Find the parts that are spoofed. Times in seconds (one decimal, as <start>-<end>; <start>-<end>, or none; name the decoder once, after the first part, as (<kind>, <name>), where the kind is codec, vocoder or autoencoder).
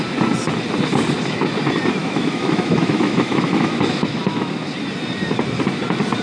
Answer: 2.0-4.6 (autoencoder, DAC-VAE)